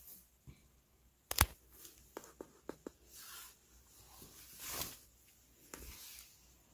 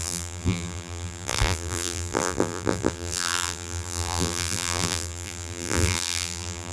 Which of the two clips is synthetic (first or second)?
second